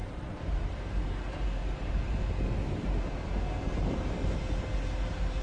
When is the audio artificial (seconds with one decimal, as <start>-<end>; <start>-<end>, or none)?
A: 0.0-0.7